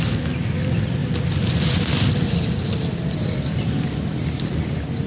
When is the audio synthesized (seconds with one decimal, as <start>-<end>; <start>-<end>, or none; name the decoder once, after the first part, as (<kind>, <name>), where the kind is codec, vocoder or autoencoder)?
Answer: none